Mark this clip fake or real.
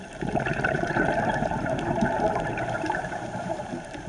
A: fake